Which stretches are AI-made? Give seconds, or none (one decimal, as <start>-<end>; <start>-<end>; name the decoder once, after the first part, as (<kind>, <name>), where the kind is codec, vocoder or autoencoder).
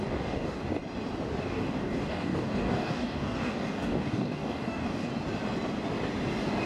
0.0-0.8 (codec, DAC); 1.4-5.1